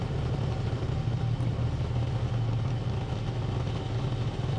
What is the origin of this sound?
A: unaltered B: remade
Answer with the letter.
A